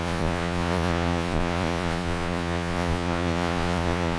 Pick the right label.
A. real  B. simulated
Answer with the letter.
B